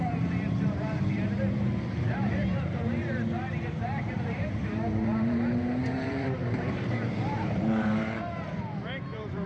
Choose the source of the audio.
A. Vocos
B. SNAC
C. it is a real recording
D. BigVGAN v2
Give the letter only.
D